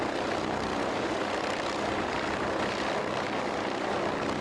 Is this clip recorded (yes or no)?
yes